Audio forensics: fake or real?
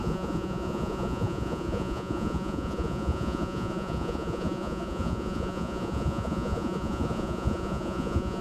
fake